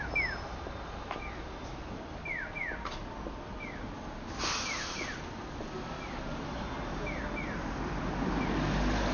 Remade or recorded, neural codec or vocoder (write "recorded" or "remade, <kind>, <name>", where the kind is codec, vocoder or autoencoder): recorded